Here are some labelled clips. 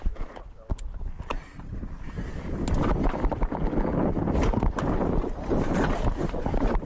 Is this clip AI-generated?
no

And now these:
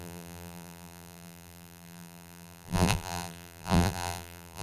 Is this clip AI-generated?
yes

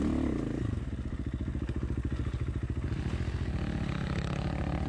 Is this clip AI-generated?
no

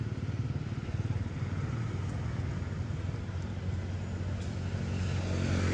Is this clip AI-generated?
no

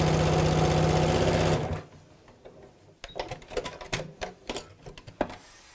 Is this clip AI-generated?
no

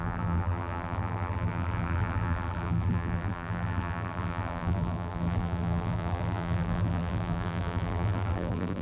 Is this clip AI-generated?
yes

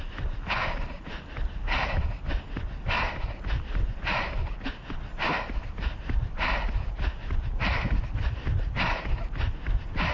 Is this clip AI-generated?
no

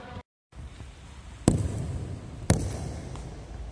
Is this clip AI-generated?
yes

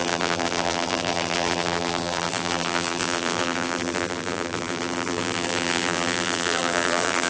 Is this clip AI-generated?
yes